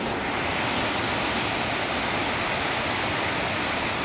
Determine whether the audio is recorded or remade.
recorded